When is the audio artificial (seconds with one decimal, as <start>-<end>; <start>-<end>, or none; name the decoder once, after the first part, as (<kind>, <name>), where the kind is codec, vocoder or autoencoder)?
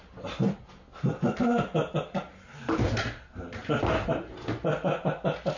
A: none